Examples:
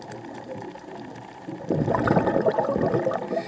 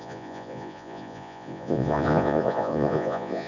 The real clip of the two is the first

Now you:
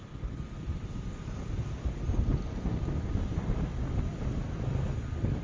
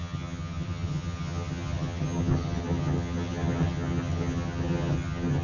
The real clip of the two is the first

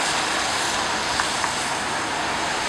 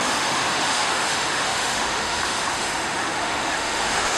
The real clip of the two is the first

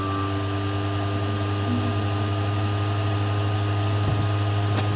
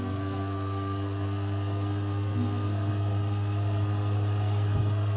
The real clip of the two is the first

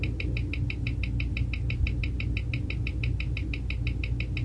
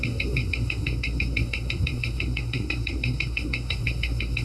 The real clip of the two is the first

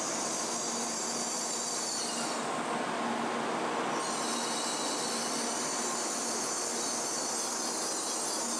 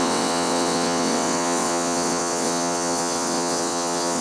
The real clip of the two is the first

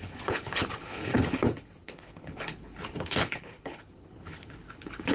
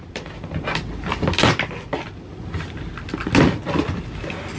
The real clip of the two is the second